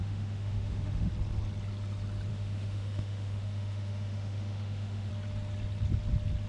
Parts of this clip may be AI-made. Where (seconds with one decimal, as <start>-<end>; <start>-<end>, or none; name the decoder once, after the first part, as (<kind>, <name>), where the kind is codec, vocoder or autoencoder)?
0.0-1.1 (autoencoder, DAC-VAE); 2.3-5.1